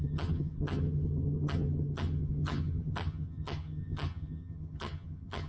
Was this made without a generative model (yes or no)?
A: no